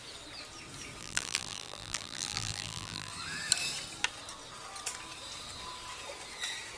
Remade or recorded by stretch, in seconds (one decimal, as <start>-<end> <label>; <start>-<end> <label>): 0.0-1.0 recorded; 1.0-3.1 remade; 3.1-6.8 recorded